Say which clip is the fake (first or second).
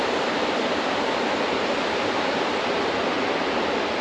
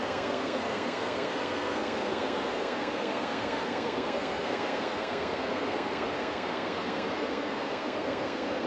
second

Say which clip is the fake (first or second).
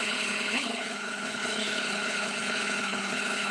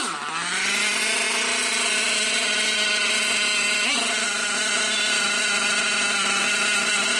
first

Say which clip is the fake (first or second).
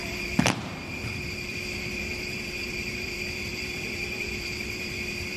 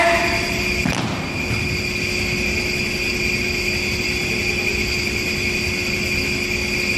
first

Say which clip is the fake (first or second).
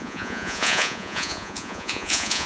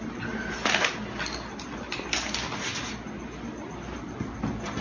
first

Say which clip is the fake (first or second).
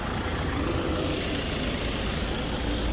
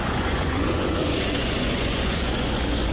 second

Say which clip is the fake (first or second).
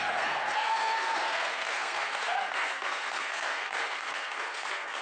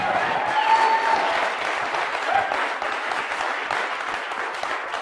first